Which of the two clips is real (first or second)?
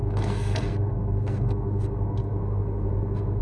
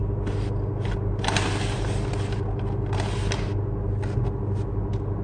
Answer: second